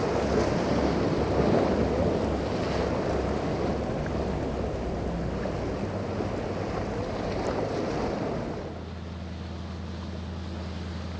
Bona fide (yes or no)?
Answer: yes